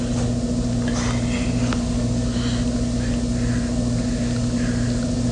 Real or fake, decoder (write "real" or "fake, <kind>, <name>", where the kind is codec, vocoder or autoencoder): real